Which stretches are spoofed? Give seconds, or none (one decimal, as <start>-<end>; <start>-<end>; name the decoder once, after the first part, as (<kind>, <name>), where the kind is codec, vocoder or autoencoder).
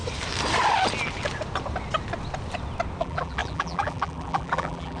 3.0-5.0 (vocoder, BigVGAN v2)